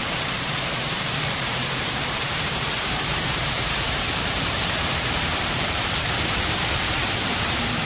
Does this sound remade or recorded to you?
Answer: remade